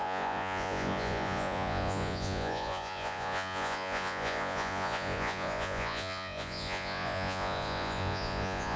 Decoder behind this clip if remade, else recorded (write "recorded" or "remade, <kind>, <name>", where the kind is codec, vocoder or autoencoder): remade, vocoder, Vocos